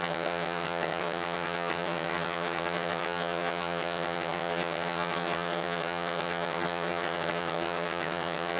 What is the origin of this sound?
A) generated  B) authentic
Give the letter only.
A